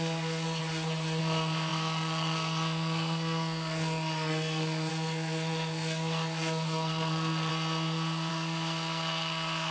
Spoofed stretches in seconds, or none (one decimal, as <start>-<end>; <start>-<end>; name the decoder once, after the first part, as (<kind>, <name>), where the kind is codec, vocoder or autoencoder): 0.0-0.6 (codec, SNAC); 1.2-7.5; 8.3-9.7